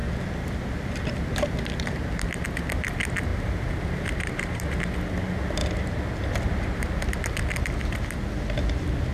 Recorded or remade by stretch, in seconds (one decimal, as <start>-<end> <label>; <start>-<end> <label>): 0.0-3.3 recorded; 3.3-4.8 remade; 4.8-9.1 recorded